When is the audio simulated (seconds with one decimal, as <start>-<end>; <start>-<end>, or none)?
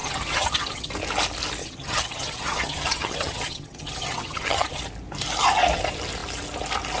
0.0-0.9; 1.6-4.8